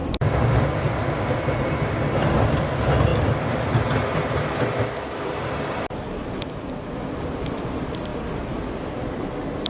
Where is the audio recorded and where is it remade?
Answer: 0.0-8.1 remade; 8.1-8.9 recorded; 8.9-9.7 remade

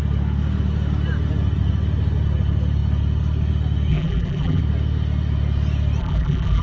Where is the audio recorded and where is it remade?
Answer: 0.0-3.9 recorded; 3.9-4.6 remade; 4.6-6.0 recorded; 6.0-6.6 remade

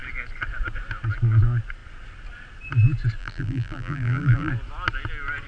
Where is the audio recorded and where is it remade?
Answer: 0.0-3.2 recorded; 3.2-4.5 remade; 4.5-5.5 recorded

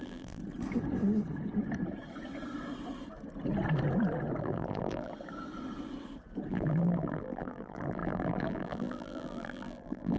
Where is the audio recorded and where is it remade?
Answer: 0.0-0.4 remade; 0.4-4.4 recorded; 4.4-5.1 remade; 5.1-6.5 recorded; 6.5-10.2 remade